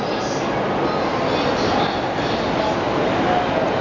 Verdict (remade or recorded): recorded